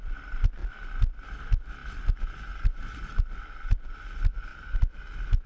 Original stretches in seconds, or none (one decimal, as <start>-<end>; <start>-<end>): 0.0-4.5; 5.0-5.5

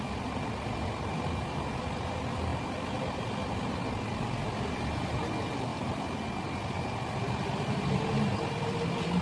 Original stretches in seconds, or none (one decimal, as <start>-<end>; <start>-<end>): 0.0-9.2

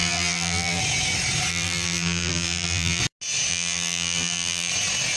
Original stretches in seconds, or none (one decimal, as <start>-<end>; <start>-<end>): 0.8-1.5; 3.0-3.5; 4.7-5.2

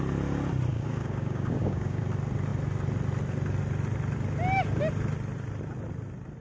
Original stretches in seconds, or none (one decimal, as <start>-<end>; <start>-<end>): 0.0-0.7; 2.0-6.4

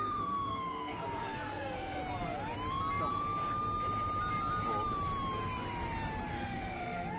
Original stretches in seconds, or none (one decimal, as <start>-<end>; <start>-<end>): 2.0-6.3